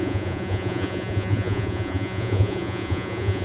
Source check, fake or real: fake